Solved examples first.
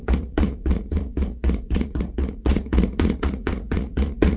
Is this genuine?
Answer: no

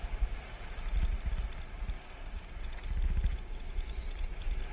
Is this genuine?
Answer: yes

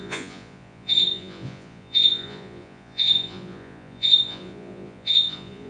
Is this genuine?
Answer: no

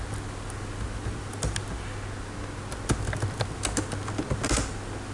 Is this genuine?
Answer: yes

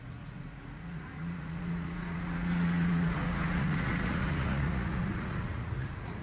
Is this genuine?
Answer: no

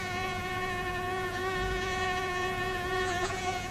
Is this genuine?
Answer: no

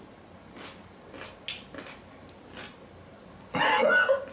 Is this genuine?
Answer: yes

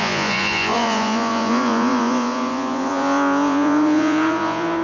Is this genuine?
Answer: no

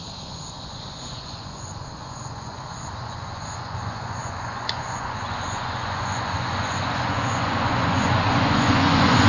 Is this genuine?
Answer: no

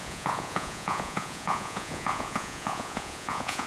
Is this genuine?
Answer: no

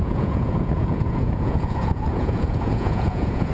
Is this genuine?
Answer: no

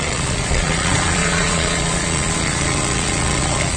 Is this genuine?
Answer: no